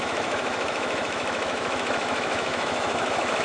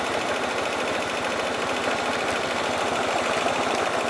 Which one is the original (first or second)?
second